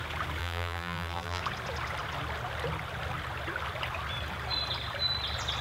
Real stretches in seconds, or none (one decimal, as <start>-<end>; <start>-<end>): 0.0-0.4; 1.4-5.6